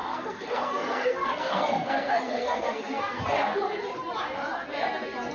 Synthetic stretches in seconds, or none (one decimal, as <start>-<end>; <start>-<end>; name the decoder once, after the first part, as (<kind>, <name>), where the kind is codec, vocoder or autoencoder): 0.0-3.2 (codec, SNAC)